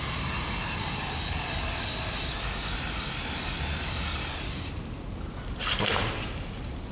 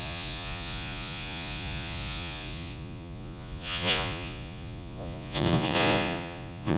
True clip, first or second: first